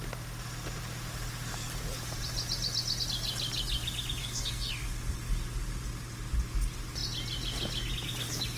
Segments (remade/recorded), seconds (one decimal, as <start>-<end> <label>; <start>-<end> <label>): 0.0-4.2 recorded; 4.2-4.7 remade; 4.7-8.6 recorded